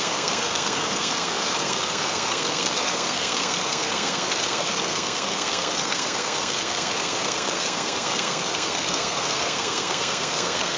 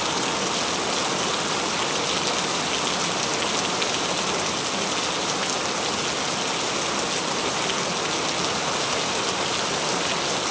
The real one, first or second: second